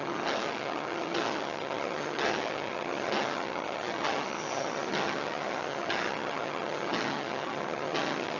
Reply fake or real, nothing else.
fake